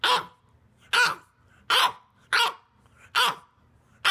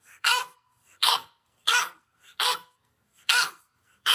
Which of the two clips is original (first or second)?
first